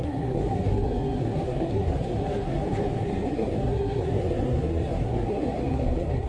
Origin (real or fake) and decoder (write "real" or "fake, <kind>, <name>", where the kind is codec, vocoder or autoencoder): fake, codec, SNAC